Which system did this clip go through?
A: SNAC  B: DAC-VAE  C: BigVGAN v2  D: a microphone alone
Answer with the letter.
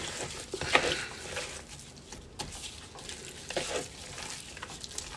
D